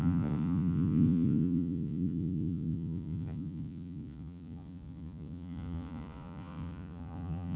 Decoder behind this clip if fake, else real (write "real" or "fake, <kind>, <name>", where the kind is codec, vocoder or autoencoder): fake, vocoder, Vocos